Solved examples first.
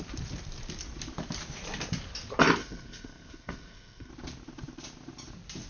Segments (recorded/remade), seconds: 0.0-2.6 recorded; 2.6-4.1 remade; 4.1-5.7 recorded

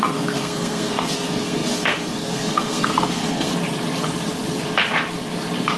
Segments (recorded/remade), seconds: 0.0-3.5 remade; 3.5-5.8 recorded

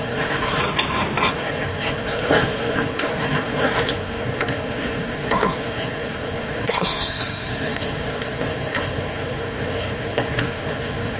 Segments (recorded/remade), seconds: 0.0-0.6 remade; 0.6-1.3 recorded; 1.3-11.2 remade

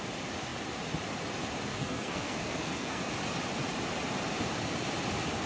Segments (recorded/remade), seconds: 0.0-1.7 recorded; 1.7-3.1 remade; 3.1-5.5 recorded

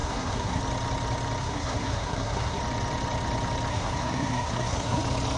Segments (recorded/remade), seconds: 0.0-0.6 remade; 0.6-1.4 recorded; 1.4-2.6 remade; 2.6-3.7 recorded; 3.7-5.0 remade; 5.0-5.4 recorded

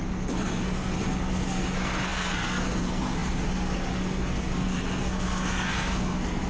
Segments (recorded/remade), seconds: 0.0-6.5 remade

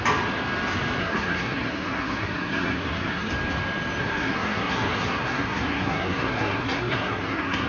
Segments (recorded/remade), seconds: 0.0-1.0 recorded; 1.0-3.3 remade; 3.3-4.0 recorded; 4.0-7.7 remade

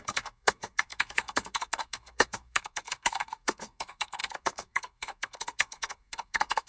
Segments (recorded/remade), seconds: 0.0-6.7 remade